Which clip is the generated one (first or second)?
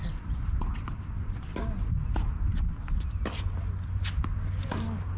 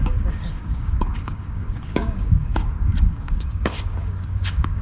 second